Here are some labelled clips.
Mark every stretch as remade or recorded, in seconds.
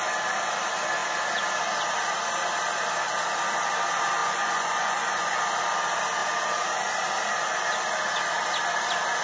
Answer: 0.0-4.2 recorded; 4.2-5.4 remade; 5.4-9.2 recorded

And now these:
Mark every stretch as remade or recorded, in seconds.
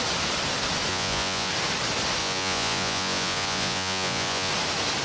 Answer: 0.0-0.9 recorded; 0.9-1.5 remade; 1.5-2.2 recorded; 2.2-4.5 remade; 4.5-5.0 recorded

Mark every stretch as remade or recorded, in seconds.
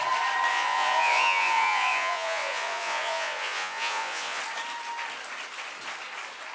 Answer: 0.0-0.5 recorded; 0.5-4.4 remade; 4.4-6.5 recorded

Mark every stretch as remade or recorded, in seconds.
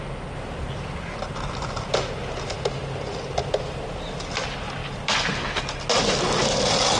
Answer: 0.0-7.0 recorded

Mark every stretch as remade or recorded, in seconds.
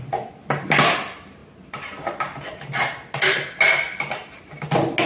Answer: 0.0-5.1 recorded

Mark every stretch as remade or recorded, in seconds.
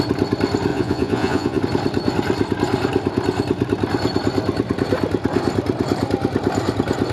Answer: 0.0-0.7 recorded; 0.7-1.6 remade; 1.6-7.1 recorded